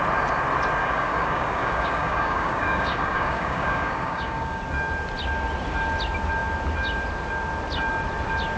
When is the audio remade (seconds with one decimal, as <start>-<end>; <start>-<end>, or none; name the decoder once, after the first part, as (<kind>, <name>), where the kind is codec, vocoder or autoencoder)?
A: 0.8-4.6 (codec, DAC)